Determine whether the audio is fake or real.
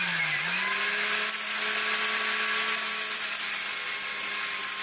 real